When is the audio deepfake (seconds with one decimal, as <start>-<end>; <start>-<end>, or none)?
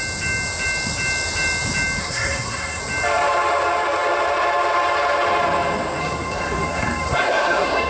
2.0-2.8; 6.0-7.9